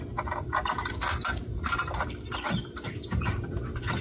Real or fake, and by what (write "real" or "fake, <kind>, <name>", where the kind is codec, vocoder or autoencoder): fake, vocoder, BigVGAN v2